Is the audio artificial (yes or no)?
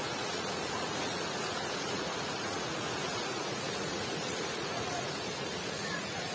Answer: yes